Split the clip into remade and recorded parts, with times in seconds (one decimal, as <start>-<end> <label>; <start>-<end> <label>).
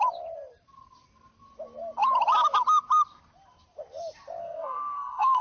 0.0-4.4 recorded; 4.4-5.4 remade